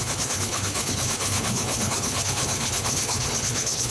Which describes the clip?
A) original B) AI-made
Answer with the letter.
B